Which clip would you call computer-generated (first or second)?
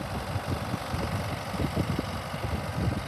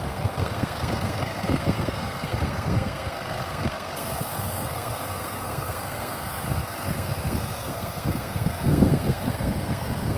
second